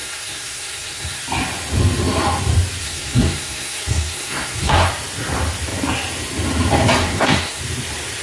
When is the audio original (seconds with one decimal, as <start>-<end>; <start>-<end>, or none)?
1.2-2.8; 4.9-7.0; 7.6-8.2